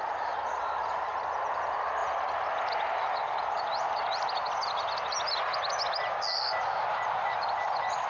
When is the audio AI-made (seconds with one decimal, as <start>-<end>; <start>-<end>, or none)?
none